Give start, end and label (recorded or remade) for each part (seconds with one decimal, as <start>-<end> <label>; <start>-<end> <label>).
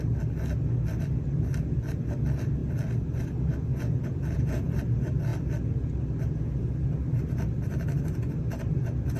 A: 0.0-3.7 recorded; 3.7-4.7 remade; 4.7-9.2 recorded